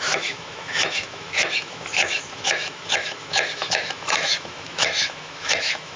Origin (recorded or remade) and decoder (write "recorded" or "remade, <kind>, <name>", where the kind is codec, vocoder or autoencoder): remade, autoencoder, DAC-VAE